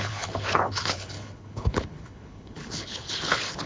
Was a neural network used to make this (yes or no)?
yes